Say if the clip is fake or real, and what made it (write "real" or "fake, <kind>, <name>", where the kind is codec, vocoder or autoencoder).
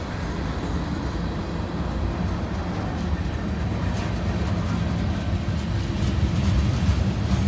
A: real